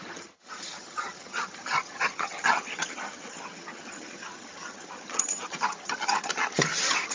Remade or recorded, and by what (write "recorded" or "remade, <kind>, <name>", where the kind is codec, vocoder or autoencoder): remade, vocoder, HiFi-GAN